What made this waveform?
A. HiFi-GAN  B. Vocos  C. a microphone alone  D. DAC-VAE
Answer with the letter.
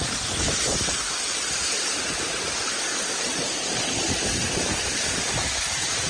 C